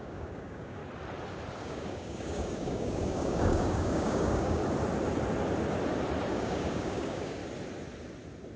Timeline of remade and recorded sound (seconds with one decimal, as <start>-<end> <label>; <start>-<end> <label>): 0.0-0.8 remade; 0.8-1.6 recorded; 1.6-4.6 remade; 4.6-6.3 recorded; 6.3-7.4 remade; 7.4-8.6 recorded